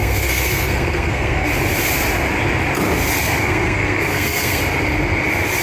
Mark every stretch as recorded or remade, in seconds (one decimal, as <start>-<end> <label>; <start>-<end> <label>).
0.0-1.5 remade; 1.5-3.2 recorded; 3.2-4.6 remade; 4.6-5.6 recorded